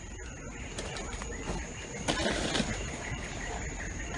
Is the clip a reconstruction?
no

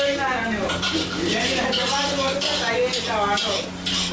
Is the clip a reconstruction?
yes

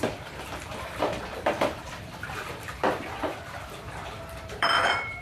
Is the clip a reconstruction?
yes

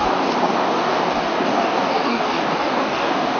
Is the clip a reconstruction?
yes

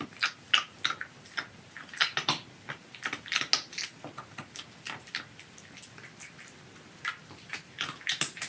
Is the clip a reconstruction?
no